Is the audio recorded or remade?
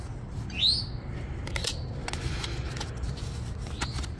recorded